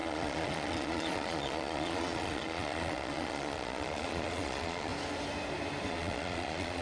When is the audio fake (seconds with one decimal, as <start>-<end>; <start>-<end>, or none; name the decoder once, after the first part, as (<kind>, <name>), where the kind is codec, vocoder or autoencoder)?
0.0-4.9 (vocoder, Vocos); 5.9-6.8